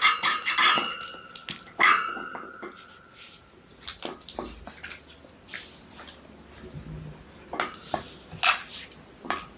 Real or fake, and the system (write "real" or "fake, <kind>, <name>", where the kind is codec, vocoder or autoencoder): real